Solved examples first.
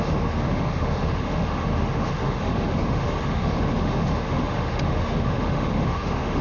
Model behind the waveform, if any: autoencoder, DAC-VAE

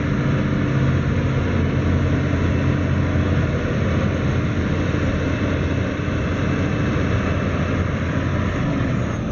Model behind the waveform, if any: none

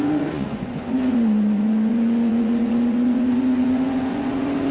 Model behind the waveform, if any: vocoder, Vocos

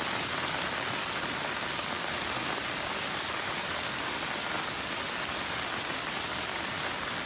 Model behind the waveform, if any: none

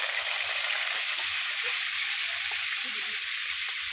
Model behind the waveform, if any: vocoder, BigVGAN v2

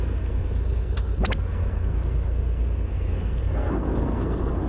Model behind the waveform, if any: codec, SNAC